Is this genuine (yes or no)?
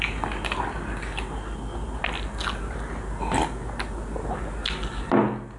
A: yes